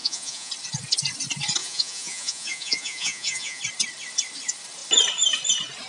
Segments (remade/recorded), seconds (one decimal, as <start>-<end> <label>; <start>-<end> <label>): 0.0-0.5 remade; 0.5-1.6 recorded; 1.6-3.6 remade; 3.6-5.9 recorded